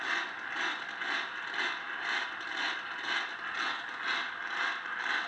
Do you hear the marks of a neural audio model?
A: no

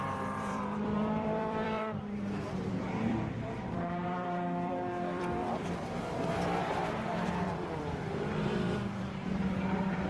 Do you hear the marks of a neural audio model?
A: yes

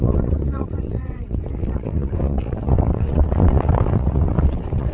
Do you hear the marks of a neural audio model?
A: yes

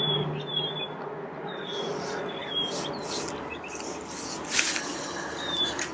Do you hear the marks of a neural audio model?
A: no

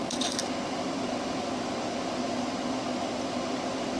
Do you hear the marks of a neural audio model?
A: no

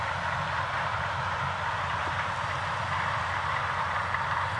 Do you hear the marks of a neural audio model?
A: no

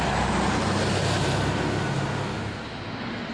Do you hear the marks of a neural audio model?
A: no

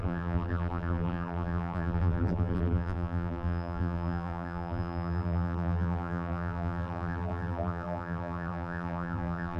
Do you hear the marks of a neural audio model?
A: yes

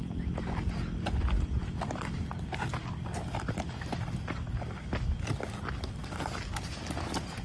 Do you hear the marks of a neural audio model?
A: no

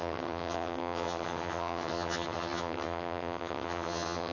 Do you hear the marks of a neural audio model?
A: yes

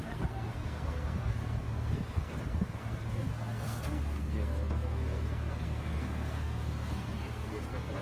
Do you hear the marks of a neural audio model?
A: yes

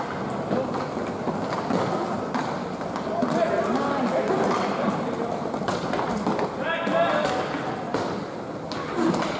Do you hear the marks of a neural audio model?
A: no